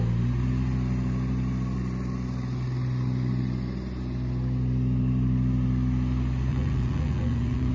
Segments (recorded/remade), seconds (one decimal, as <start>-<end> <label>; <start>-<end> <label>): 0.0-6.5 recorded; 6.5-7.7 remade